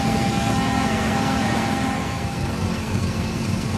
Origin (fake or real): fake